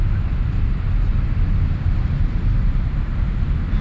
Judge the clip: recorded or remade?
recorded